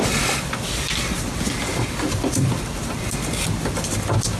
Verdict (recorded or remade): recorded